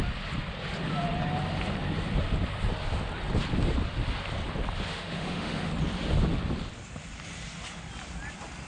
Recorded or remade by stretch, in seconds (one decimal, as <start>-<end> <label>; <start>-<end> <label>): 0.0-4.9 recorded; 4.9-5.7 remade; 5.7-8.7 recorded